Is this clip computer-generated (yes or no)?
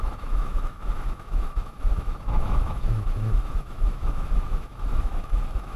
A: yes